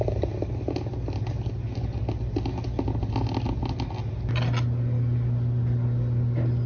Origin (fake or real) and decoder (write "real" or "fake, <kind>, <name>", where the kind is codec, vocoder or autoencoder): real